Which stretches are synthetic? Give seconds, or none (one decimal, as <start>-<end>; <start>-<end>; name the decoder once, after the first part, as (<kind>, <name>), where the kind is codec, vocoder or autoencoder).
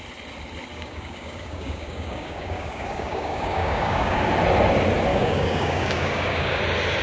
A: 0.7-4.2 (codec, DAC); 5.1-6.6